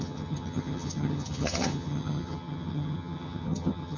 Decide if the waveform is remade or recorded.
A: remade